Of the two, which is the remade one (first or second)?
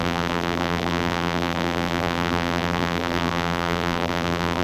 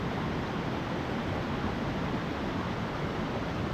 first